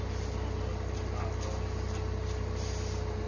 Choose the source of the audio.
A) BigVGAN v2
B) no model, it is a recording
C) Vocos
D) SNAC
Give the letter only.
B